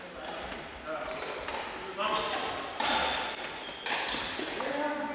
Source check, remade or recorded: recorded